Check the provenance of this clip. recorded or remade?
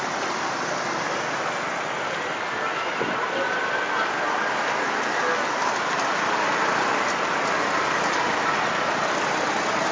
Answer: recorded